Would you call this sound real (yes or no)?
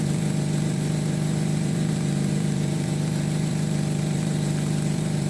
no